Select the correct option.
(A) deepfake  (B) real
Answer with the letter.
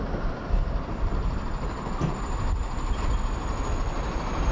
B